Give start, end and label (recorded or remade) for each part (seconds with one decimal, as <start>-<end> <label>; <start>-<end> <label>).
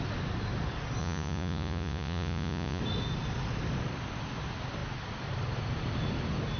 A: 0.0-1.0 recorded; 1.0-2.8 remade; 2.8-6.6 recorded